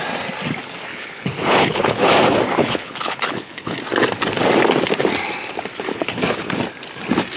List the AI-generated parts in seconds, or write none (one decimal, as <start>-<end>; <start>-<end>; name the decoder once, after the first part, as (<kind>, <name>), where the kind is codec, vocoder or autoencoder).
0.9-2.1 (codec, HILCodec); 2.6-3.8; 5.9-6.5